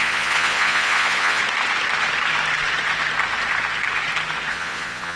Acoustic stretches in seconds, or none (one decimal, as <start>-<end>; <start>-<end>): 1.4-4.5